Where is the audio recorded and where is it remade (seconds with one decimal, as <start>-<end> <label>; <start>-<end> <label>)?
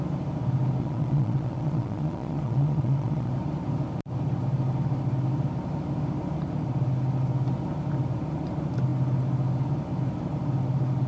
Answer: 0.0-0.8 recorded; 0.8-3.3 remade; 3.3-11.1 recorded